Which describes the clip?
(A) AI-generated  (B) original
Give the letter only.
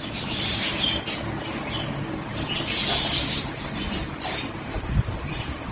A